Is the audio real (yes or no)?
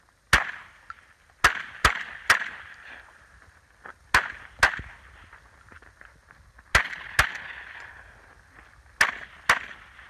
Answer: yes